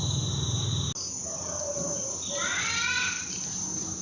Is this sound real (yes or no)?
yes